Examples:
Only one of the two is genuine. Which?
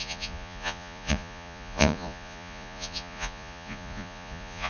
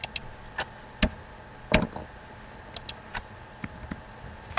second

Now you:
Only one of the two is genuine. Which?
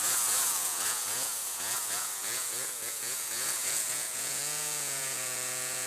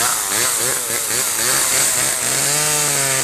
second